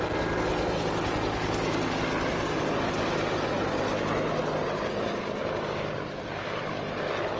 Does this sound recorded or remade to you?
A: recorded